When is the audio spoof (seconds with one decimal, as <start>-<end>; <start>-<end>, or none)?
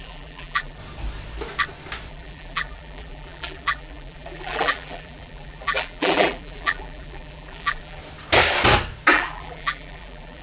0.0-0.8; 2.1-8.0; 9.1-10.4